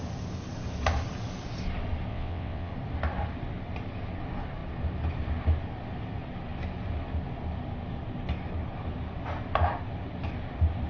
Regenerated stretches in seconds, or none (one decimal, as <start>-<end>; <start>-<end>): 2.1-2.7